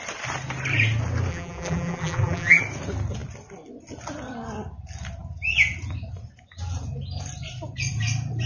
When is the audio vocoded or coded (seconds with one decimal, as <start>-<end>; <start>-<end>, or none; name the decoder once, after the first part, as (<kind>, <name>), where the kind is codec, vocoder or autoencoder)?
1.3-2.6 (vocoder, BigVGAN v2)